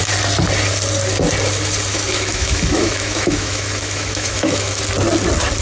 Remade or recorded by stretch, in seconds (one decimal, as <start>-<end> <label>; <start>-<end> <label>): 0.0-1.9 recorded; 1.9-4.8 remade; 4.8-5.6 recorded